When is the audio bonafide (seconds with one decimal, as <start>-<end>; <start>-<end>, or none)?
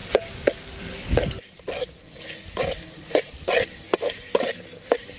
0.0-5.2